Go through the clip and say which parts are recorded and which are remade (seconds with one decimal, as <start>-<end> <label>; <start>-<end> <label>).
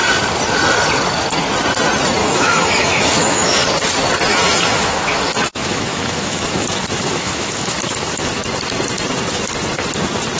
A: 0.0-2.2 recorded; 2.2-3.6 remade; 3.6-4.3 recorded; 4.3-8.4 remade; 8.4-10.4 recorded